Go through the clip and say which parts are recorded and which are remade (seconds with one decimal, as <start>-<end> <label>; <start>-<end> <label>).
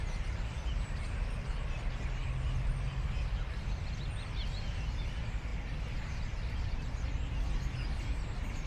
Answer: 0.0-8.7 recorded